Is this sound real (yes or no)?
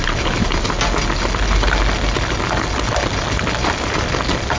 yes